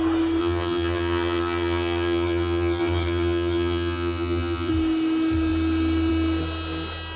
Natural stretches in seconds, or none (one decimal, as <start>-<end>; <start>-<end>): 0.0-0.4; 4.7-7.2